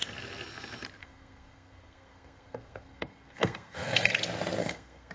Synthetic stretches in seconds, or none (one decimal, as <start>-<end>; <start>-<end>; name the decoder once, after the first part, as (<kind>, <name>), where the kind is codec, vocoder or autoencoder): 1.0-4.1 (codec, SNAC); 4.6-5.1